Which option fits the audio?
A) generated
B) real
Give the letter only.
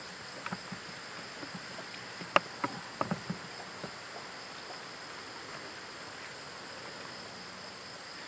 B